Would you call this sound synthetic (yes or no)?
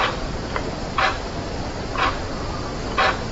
yes